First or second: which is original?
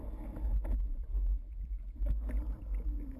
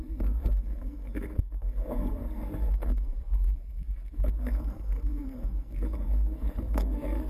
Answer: first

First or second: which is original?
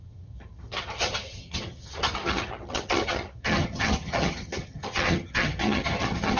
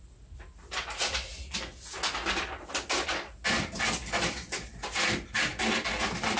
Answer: second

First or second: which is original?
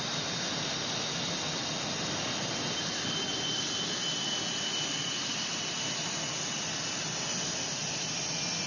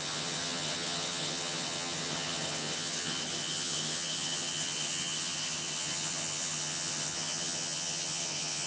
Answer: first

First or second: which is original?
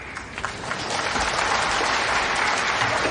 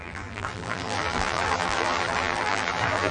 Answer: first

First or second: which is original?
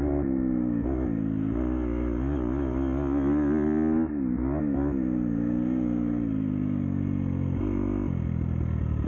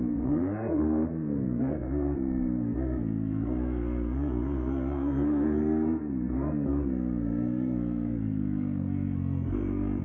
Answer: first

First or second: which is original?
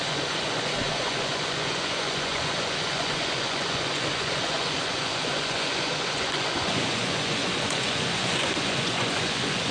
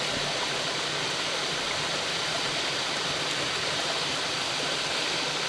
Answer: second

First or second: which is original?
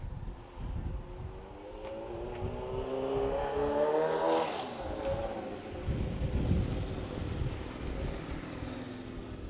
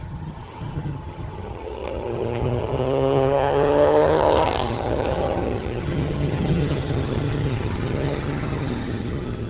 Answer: first